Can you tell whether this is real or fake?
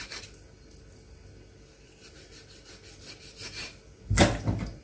real